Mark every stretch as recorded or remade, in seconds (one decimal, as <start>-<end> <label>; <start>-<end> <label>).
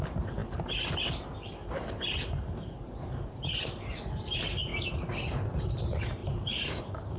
0.0-0.4 remade; 0.4-3.3 recorded; 3.3-4.7 remade; 4.7-5.6 recorded; 5.6-7.2 remade